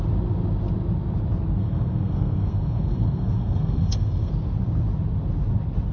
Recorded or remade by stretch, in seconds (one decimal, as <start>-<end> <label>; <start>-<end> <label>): 0.0-1.6 recorded; 1.6-4.3 remade; 4.3-5.9 recorded